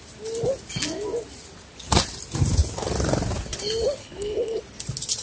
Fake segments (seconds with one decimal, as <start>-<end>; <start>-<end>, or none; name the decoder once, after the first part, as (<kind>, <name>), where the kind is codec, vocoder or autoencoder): 4.0-4.6 (codec, HILCodec)